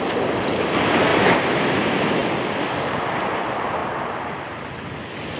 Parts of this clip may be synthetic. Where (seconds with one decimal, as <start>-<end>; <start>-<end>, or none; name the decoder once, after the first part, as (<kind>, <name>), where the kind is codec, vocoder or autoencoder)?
none